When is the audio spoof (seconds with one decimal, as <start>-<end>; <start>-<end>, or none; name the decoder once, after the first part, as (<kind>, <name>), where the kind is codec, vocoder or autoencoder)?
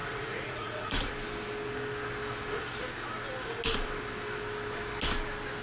0.0-1.1 (vocoder, Vocos)